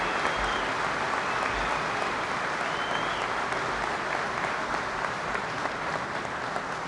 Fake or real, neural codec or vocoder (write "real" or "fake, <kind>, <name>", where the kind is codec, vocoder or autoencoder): real